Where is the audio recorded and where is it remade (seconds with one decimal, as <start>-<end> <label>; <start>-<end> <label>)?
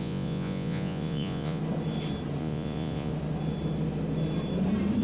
0.0-1.6 remade; 1.6-2.4 recorded; 2.4-3.1 remade; 3.1-5.0 recorded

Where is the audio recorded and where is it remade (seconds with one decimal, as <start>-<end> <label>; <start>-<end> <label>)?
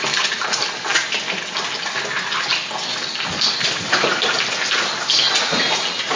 0.0-6.2 recorded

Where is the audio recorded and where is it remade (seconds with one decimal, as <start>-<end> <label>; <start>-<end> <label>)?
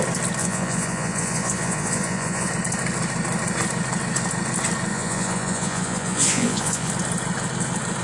0.0-0.4 recorded; 0.4-2.5 remade; 2.5-4.9 recorded; 4.9-6.9 remade; 6.9-8.0 recorded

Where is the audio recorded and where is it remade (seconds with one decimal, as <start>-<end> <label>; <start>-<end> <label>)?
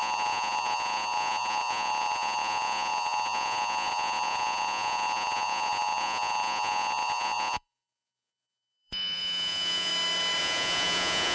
0.0-9.9 remade; 9.9-10.4 recorded; 10.4-11.3 remade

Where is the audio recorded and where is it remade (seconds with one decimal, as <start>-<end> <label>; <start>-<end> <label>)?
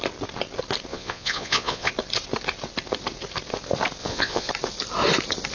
0.0-0.9 recorded; 0.9-1.9 remade; 1.9-4.0 recorded; 4.0-4.5 remade; 4.5-5.5 recorded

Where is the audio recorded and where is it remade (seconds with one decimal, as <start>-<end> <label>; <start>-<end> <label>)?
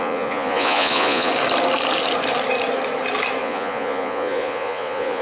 0.0-1.3 remade; 1.3-3.4 recorded; 3.4-5.2 remade